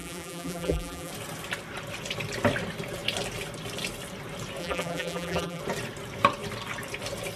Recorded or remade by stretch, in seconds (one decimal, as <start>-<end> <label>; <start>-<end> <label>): 0.0-1.1 remade; 1.1-4.6 recorded; 4.6-5.6 remade; 5.6-7.4 recorded